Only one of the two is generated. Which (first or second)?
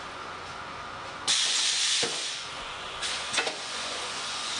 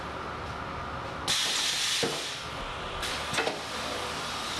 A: first